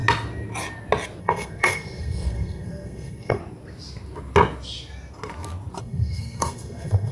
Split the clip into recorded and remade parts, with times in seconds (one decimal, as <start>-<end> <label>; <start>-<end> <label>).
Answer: 0.0-1.2 recorded; 1.2-3.4 remade; 3.4-5.8 recorded; 5.8-7.1 remade